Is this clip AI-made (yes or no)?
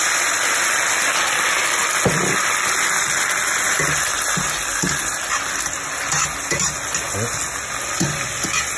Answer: no